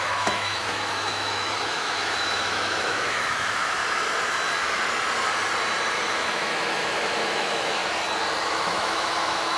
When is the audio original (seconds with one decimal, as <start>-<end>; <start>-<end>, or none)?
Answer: 3.8-6.1; 7.8-8.4